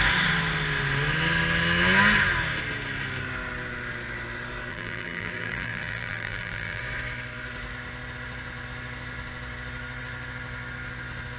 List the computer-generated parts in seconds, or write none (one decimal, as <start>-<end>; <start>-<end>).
4.7-6.8